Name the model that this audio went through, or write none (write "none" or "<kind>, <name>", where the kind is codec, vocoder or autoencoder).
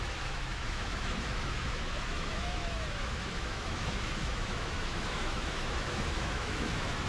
autoencoder, DAC-VAE